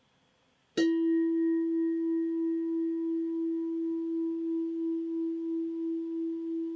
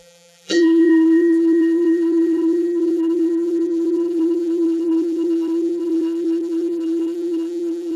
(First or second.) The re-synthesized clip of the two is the second